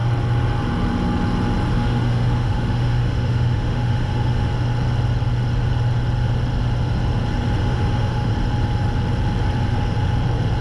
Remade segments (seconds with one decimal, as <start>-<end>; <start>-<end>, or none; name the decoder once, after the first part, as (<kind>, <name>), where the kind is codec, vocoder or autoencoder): 1.7-4.5 (autoencoder, DAC-VAE); 7.6-8.3